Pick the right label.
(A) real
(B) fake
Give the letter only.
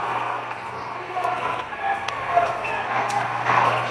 B